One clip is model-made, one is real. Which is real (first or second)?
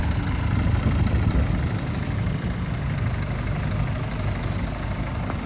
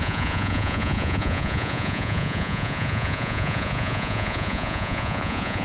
first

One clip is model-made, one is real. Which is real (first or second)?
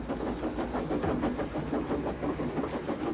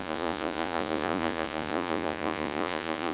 first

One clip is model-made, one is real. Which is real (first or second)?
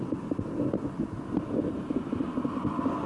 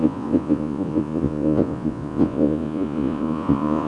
first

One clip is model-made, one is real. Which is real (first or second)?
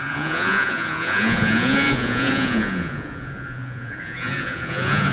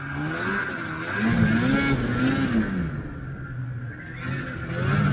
second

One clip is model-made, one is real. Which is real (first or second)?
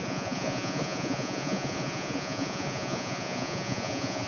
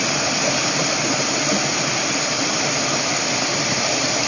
second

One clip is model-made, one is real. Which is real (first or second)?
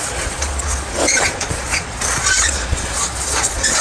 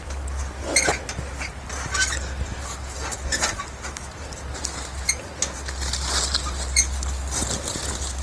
second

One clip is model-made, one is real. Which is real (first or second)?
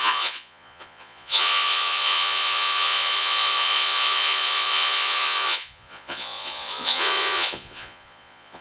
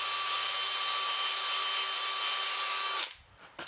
second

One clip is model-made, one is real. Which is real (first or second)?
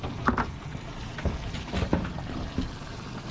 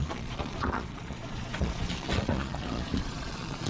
first